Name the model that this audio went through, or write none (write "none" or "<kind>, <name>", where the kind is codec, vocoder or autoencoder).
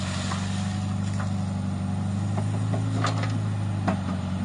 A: none